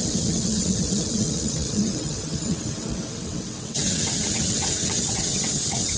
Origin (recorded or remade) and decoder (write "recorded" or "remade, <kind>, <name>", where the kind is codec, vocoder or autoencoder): remade, vocoder, WaveNeXt